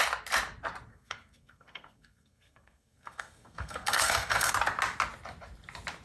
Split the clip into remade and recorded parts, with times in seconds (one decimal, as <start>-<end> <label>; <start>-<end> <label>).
0.0-0.9 recorded; 0.9-4.5 remade; 4.5-6.0 recorded